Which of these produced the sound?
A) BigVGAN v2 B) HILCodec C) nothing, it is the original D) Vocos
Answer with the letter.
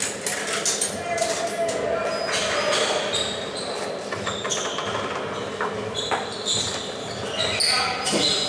C